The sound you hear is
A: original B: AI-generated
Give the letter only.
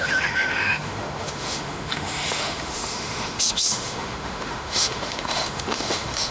B